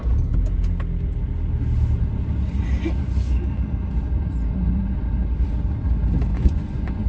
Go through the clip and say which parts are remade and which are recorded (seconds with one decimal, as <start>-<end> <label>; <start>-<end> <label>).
0.0-6.3 recorded; 6.3-7.1 remade